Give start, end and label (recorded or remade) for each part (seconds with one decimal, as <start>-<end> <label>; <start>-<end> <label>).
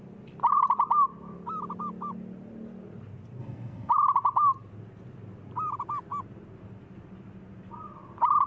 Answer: 0.0-3.4 recorded; 3.4-3.9 remade; 3.9-8.5 recorded